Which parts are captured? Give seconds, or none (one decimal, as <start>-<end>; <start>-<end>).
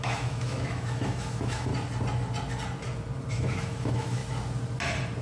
1.7-3.3; 4.2-5.2